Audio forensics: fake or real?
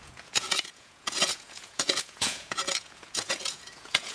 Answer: fake